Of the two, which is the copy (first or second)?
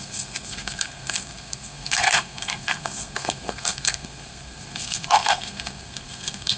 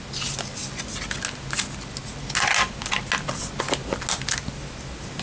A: first